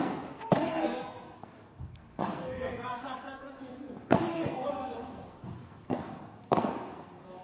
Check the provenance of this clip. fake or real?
fake